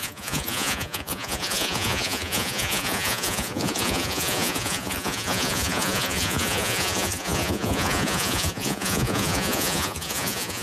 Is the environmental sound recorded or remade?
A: remade